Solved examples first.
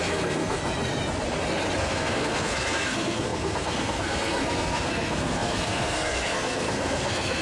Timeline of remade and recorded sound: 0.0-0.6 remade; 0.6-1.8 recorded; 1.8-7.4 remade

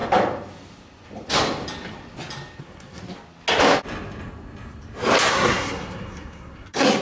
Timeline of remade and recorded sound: 0.0-2.6 recorded; 2.6-3.0 remade; 3.0-5.3 recorded; 5.3-7.0 remade

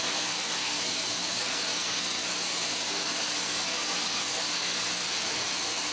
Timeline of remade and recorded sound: 0.0-5.9 remade